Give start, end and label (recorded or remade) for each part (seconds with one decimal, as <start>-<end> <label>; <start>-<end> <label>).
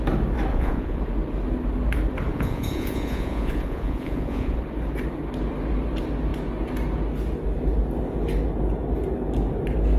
0.0-0.5 recorded; 0.5-1.0 remade; 1.0-2.3 recorded; 2.3-4.6 remade; 4.6-10.0 recorded